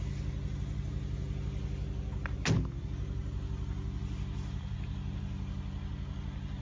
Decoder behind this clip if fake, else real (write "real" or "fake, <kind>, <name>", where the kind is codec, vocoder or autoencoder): real